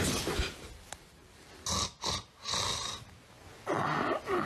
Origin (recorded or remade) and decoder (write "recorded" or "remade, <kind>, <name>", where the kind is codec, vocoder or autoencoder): recorded